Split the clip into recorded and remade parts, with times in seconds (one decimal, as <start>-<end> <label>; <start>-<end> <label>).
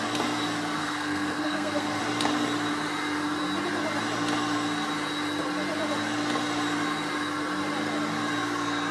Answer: 0.0-0.8 recorded; 0.8-2.0 remade; 2.0-8.9 recorded